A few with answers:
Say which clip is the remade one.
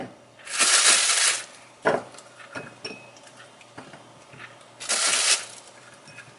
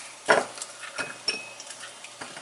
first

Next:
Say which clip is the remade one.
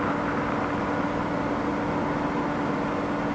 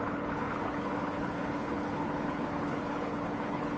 second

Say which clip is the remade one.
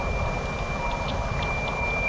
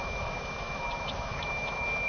second